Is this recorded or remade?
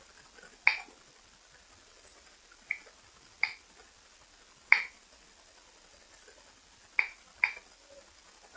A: recorded